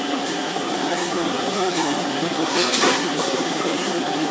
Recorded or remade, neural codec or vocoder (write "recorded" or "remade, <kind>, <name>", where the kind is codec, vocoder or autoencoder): remade, codec, SNAC